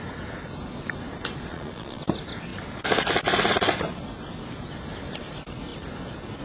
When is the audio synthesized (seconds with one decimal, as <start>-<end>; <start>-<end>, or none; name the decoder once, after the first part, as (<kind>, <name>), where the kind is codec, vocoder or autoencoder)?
1.5-2.0 (vocoder, Vocos)